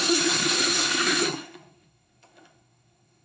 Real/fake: fake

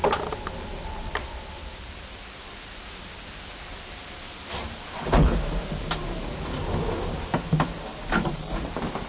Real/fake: real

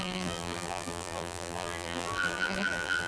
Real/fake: fake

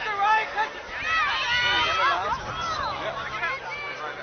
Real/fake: real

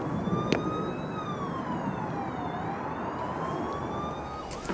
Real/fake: real